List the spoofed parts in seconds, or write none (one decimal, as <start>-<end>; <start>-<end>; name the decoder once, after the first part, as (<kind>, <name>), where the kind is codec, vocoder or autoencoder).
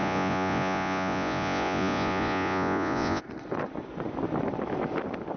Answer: 0.0-3.2 (vocoder, Vocos)